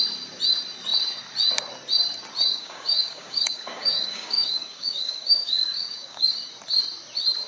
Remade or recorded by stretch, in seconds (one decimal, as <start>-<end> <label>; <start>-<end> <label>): 0.0-2.5 recorded; 2.5-6.5 remade; 6.5-7.5 recorded